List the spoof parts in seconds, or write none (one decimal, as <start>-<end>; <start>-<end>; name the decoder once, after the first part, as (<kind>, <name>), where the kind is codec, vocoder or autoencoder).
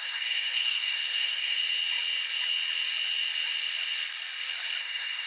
0.0-1.6 (codec, SNAC); 4.8-5.3